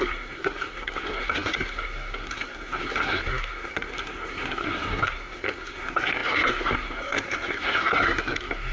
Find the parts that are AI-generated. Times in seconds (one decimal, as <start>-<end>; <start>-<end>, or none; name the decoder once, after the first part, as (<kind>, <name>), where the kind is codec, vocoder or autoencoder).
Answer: 0.0-8.7 (codec, SNAC)